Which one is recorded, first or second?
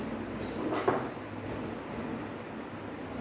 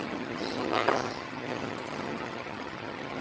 first